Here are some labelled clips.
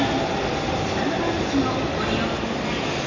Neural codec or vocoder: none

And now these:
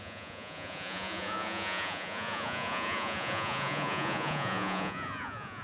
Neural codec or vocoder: vocoder, Vocos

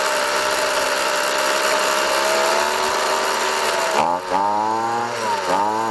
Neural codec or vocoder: none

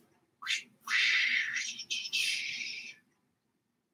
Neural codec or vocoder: vocoder, BigVGAN v2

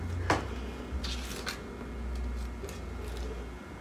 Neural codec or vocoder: none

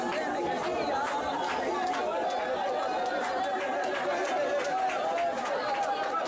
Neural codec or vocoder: none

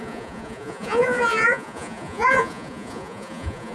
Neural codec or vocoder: vocoder, Vocos